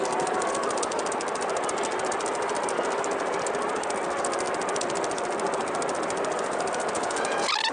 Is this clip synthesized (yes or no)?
no